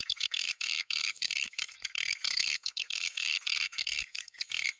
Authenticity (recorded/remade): remade